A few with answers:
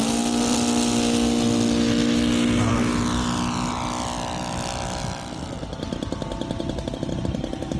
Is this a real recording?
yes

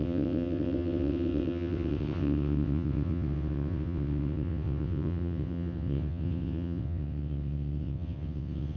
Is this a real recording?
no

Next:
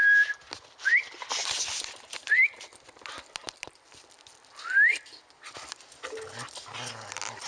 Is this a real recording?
yes